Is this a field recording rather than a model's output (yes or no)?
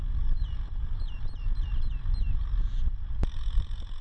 yes